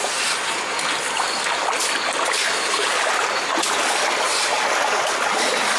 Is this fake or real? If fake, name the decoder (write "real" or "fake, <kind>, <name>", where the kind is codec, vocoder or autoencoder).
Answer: real